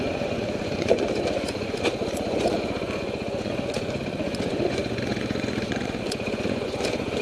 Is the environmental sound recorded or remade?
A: remade